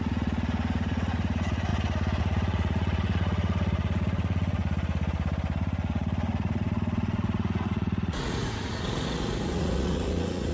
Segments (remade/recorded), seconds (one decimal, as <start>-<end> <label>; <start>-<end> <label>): 0.0-1.7 remade; 1.7-2.2 recorded; 2.2-4.6 remade; 4.6-5.6 recorded; 5.6-10.5 remade